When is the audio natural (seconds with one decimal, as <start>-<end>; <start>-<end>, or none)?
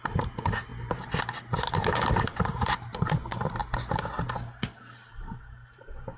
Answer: 0.7-1.2; 3.6-5.1